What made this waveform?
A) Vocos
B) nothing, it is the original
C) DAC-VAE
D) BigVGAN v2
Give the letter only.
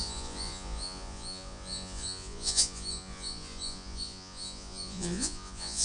A